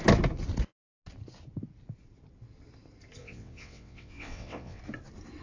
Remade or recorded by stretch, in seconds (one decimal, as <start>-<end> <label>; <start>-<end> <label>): 0.0-3.2 recorded; 3.2-4.8 remade; 4.8-5.4 recorded